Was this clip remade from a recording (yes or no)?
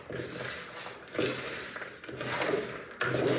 no